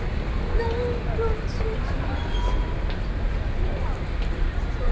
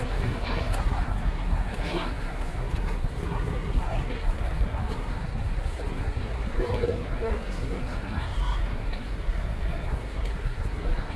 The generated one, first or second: second